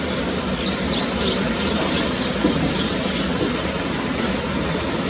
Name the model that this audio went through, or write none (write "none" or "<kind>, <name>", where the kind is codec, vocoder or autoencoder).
none